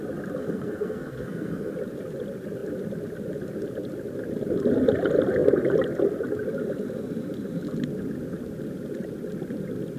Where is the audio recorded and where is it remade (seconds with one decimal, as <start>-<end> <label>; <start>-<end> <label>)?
0.0-0.4 recorded; 0.4-1.7 remade; 1.7-10.0 recorded